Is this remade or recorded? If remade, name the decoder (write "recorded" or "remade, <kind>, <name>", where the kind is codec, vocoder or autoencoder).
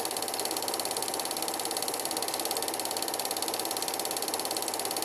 recorded